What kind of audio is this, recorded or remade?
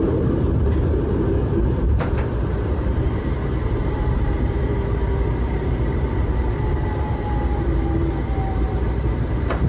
remade